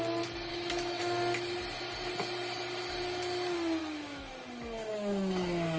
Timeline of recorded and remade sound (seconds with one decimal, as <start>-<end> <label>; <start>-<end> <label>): 0.0-0.5 recorded; 0.5-1.0 remade; 1.0-3.8 recorded; 3.8-4.3 remade; 4.3-5.8 recorded

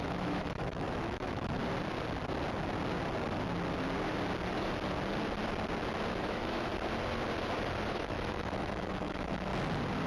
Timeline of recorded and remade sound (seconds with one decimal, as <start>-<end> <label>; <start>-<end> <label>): 0.0-1.6 remade; 1.6-6.2 recorded; 6.2-6.7 remade; 6.7-7.9 recorded; 7.9-9.5 remade; 9.5-10.1 recorded

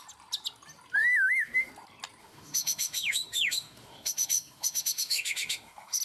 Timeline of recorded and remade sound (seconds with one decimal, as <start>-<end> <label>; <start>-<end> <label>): 0.0-1.0 recorded; 1.0-1.7 remade; 1.7-2.2 recorded; 2.2-6.0 remade

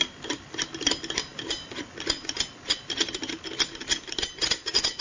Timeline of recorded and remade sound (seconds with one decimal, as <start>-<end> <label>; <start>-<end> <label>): 0.0-5.0 recorded

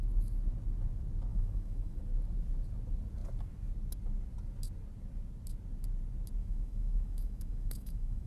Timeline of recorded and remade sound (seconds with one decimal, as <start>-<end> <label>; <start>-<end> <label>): 0.0-1.3 recorded; 1.3-2.0 remade; 2.0-6.4 recorded; 6.4-8.3 remade